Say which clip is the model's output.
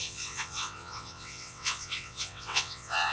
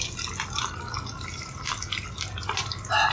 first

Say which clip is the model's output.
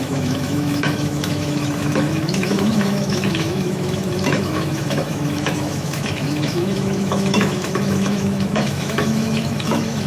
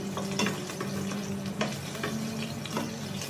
first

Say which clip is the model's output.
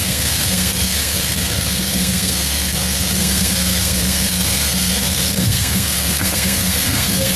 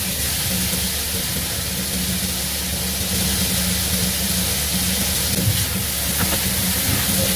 first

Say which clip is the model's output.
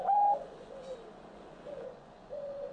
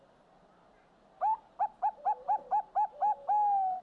first